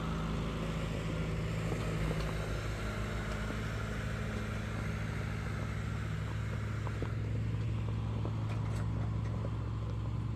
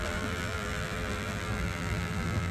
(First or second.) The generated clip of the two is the second